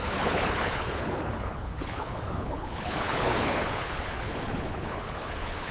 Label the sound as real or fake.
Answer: fake